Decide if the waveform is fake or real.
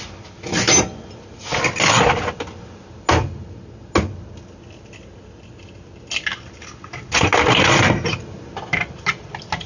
real